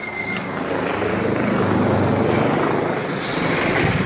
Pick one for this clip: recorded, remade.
recorded